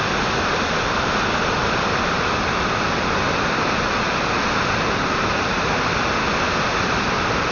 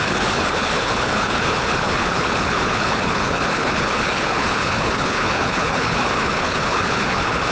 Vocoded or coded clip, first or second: second